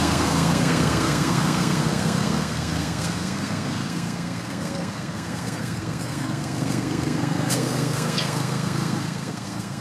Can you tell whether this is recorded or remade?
remade